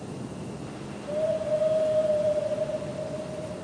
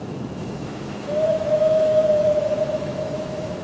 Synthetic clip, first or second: second